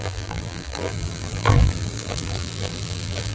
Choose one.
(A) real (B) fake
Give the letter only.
B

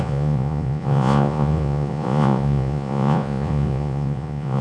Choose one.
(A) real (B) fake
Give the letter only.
B